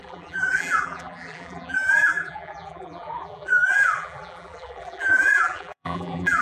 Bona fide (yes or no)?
no